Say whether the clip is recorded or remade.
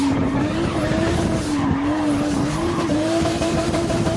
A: remade